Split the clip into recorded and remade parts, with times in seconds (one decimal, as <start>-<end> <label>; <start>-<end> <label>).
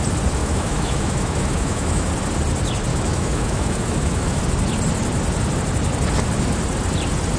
0.0-0.4 recorded; 0.4-2.1 remade; 2.1-2.9 recorded; 2.9-4.4 remade; 4.4-7.4 recorded